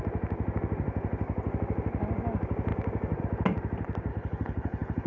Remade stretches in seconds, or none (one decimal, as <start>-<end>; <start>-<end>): 4.1-5.1